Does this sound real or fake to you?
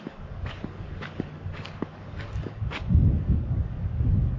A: fake